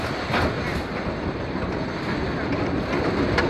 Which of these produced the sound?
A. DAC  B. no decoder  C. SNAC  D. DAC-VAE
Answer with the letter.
B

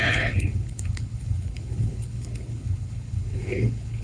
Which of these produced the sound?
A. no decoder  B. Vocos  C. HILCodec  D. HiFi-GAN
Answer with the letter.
C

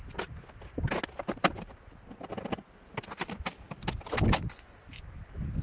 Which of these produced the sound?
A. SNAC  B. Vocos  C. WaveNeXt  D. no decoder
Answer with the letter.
D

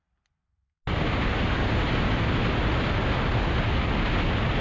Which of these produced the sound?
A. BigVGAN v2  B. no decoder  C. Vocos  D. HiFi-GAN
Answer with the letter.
B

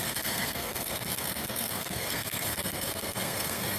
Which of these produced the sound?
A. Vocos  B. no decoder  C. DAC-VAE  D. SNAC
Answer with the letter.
D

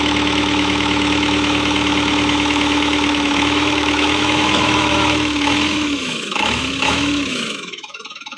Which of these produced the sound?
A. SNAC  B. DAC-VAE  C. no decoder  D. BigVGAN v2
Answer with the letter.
B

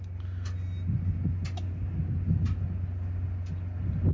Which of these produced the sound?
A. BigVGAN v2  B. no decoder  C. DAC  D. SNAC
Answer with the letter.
B